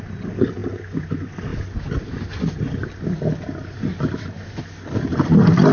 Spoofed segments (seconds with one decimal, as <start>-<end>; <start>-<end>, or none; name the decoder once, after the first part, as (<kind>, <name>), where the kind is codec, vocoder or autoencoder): none